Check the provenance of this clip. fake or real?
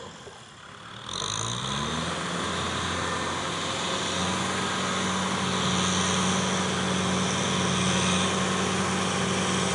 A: real